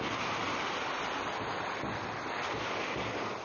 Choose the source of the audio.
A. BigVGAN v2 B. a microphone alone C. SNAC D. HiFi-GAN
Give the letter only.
B